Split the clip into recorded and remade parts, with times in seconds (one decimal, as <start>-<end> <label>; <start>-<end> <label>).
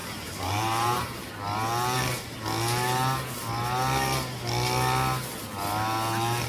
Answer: 0.0-1.3 remade; 1.3-6.5 recorded